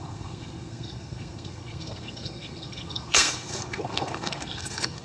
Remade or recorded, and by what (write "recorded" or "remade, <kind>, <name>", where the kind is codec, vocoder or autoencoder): remade, codec, SNAC